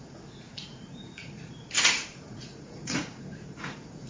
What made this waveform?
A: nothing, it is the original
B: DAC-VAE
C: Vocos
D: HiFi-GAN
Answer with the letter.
C